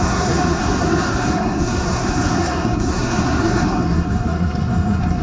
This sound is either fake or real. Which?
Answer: fake